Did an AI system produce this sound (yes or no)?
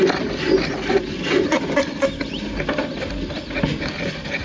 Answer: no